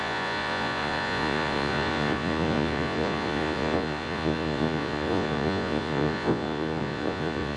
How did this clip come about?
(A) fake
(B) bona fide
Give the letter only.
A